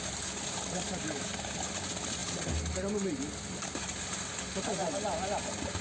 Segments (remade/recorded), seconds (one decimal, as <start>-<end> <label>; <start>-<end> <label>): 0.0-5.8 recorded